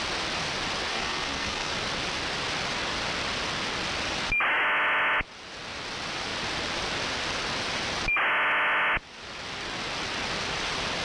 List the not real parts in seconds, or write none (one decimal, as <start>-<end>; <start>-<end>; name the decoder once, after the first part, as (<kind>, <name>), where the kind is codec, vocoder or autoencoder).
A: 0.9-1.7 (codec, SNAC)